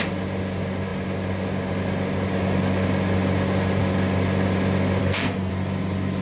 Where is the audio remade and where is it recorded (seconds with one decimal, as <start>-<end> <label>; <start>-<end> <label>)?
0.0-5.0 recorded; 5.0-5.5 remade; 5.5-6.2 recorded